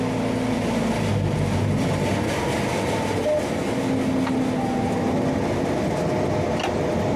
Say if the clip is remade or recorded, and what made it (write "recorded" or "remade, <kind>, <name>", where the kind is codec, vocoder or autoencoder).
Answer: recorded